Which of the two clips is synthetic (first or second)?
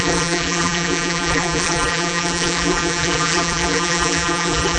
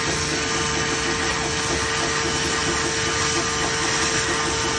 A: first